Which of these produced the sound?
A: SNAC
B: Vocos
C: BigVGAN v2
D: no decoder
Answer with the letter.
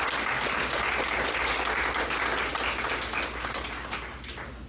D